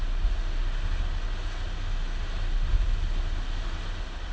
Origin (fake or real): real